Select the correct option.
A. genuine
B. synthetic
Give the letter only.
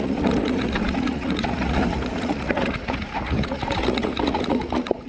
B